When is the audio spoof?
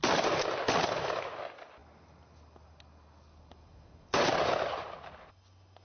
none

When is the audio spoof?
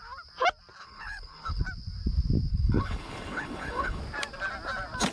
0.8-1.6 (codec, HILCodec); 2.5-4.0